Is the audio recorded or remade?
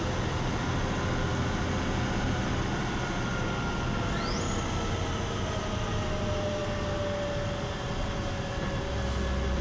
recorded